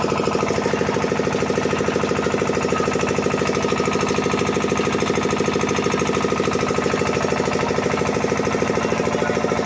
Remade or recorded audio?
recorded